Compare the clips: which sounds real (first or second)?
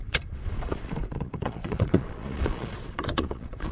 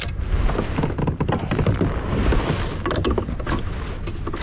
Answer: second